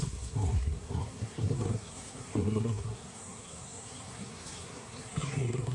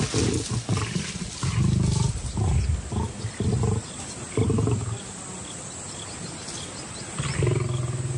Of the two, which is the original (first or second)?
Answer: second